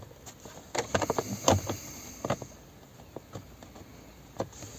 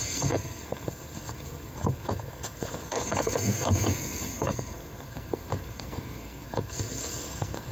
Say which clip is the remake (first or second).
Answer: second